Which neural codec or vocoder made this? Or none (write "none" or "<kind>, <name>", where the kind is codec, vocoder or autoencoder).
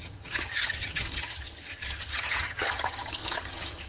vocoder, HiFi-GAN